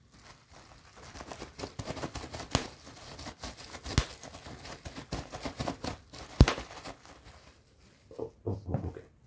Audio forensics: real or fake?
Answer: real